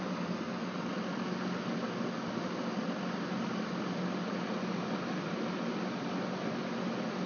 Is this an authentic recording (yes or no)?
yes